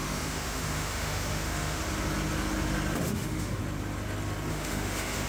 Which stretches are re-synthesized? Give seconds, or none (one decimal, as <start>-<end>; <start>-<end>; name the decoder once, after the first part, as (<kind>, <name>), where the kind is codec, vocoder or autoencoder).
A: 0.0-1.8 (autoencoder, DAC-VAE); 3.0-3.6; 4.5-5.3